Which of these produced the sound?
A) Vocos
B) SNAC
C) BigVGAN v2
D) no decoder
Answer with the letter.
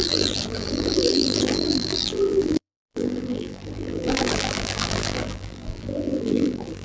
C